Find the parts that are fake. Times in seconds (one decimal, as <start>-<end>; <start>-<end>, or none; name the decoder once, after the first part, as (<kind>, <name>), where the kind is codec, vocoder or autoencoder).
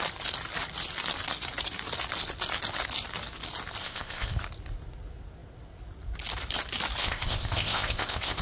3.8-4.4 (codec, ZipCodec); 7.0-8.4